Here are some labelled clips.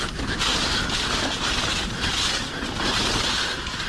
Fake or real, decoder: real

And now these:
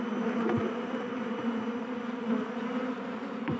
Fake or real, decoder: real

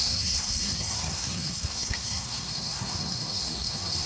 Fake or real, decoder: fake, codec, SNAC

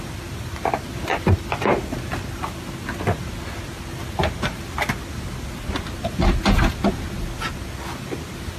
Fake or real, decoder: real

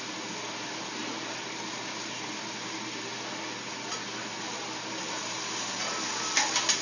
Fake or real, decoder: real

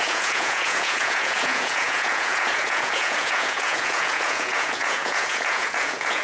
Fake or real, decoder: fake, vocoder, Vocos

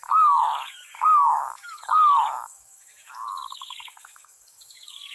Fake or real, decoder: fake, codec, DAC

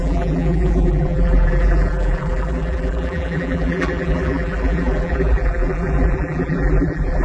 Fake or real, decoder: fake, vocoder, BigVGAN v2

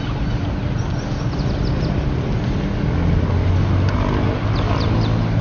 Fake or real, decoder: real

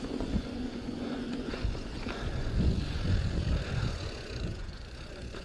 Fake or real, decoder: fake, vocoder, Vocos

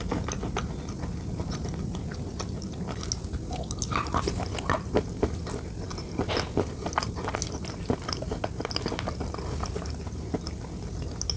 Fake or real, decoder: real